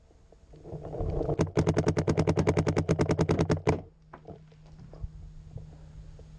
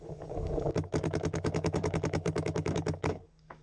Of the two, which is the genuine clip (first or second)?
first